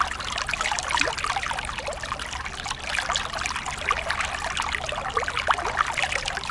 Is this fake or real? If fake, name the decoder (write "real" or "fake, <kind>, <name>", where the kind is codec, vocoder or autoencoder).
real